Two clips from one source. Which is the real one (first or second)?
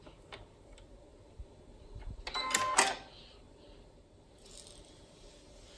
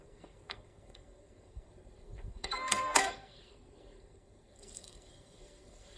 first